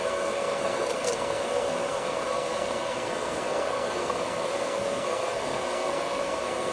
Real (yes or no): no